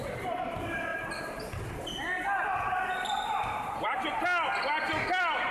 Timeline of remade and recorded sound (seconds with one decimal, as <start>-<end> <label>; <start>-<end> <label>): 0.0-5.5 recorded